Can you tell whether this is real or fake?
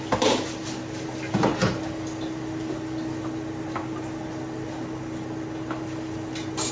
real